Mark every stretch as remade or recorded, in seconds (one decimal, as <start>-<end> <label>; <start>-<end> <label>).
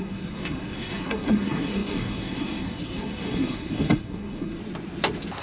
0.0-4.6 remade; 4.6-5.4 recorded